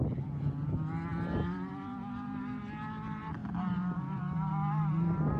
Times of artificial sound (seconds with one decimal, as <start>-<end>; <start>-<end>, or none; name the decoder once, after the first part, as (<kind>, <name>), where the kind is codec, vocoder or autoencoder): 1.1-1.7 (vocoder, BigVGAN v2); 3.4-4.2